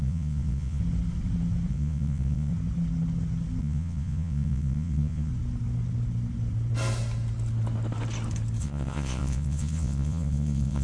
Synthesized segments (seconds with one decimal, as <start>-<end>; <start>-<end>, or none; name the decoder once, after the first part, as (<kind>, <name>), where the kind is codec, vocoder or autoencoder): 0.0-0.8 (vocoder, Vocos); 1.7-2.5; 3.6-5.3; 8.6-10.8